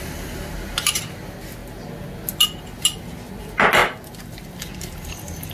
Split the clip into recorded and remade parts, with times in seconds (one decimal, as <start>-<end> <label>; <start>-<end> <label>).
0.0-5.5 recorded